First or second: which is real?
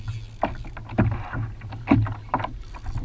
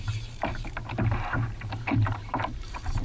first